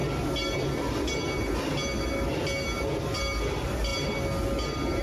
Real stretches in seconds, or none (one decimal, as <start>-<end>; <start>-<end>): 0.0-5.0